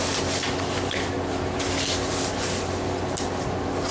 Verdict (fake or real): real